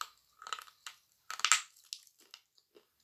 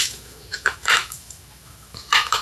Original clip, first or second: first